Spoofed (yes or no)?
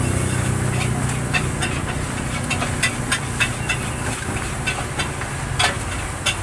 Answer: no